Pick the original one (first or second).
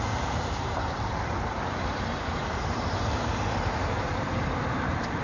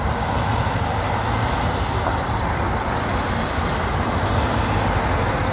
second